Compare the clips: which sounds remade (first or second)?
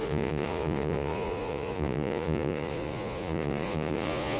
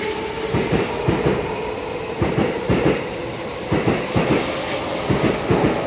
first